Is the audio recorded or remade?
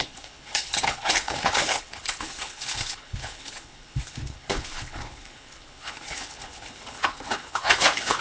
remade